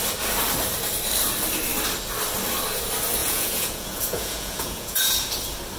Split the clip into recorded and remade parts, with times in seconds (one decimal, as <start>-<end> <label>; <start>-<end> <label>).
0.0-3.2 recorded; 3.2-5.1 remade; 5.1-5.8 recorded